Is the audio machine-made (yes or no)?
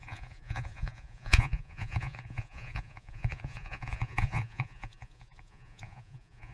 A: yes